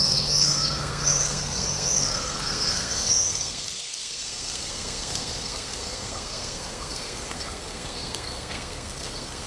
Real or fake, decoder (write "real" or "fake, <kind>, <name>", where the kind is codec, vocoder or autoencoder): fake, codec, SNAC